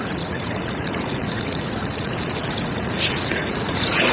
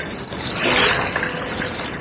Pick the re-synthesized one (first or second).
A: first